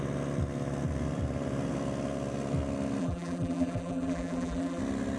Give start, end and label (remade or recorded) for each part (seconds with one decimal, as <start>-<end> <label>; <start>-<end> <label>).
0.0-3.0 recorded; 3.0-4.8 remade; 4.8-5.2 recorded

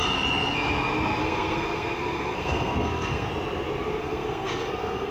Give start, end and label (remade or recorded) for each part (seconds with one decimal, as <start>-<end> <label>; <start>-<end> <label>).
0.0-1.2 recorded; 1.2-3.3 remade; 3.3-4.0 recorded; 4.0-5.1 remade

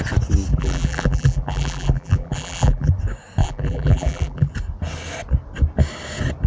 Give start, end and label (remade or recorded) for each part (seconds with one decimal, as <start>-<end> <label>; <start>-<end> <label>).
0.0-0.5 recorded; 0.5-2.9 remade; 2.9-3.4 recorded; 3.4-4.5 remade; 4.5-6.5 recorded

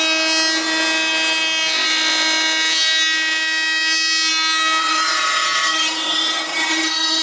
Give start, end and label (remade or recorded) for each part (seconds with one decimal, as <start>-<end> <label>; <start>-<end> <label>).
0.0-4.8 recorded; 4.8-7.2 remade